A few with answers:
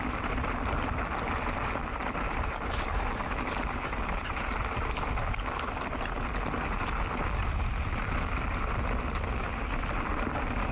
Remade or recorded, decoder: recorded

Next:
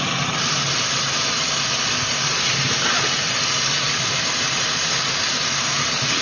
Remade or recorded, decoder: recorded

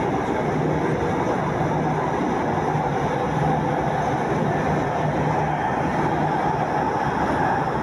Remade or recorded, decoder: recorded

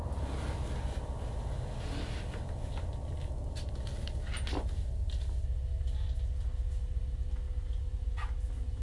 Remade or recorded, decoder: recorded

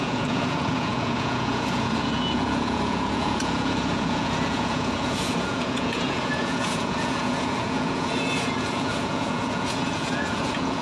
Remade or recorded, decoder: remade, vocoder, Vocos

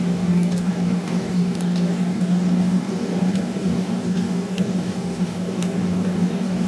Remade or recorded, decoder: remade, codec, DAC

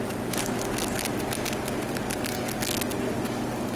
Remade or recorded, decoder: recorded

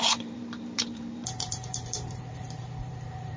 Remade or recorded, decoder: remade, vocoder, BigVGAN v2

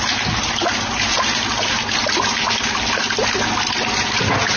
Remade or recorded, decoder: recorded